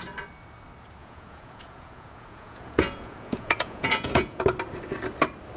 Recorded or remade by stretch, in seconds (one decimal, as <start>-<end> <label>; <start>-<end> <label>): 0.0-1.0 recorded; 1.0-4.4 remade; 4.4-5.6 recorded